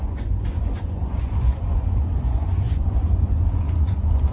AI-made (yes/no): yes